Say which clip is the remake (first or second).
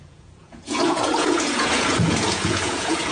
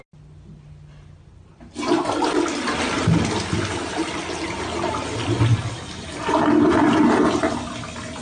first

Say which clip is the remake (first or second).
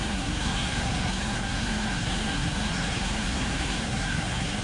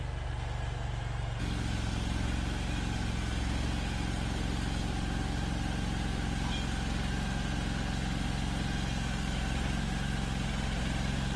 first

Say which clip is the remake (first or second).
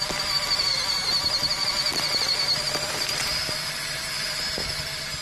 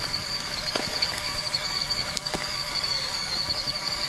second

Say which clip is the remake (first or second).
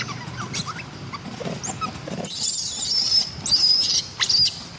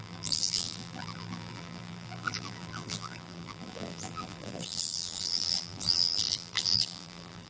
second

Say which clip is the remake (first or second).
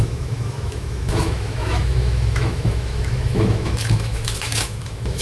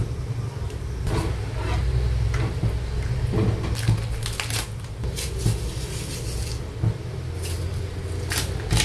first